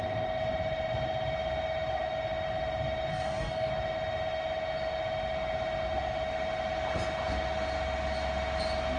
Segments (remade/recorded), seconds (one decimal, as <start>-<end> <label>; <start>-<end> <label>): 0.0-3.1 recorded; 3.1-3.7 remade; 3.7-9.0 recorded